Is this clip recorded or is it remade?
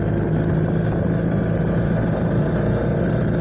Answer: recorded